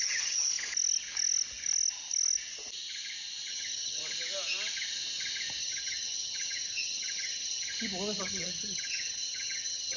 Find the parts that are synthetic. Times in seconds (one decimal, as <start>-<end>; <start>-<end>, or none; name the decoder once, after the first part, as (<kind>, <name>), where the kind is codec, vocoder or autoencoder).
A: 0.0-0.5 (vocoder, HiFi-GAN); 3.5-4.0; 5.6-7.7; 8.2-10.0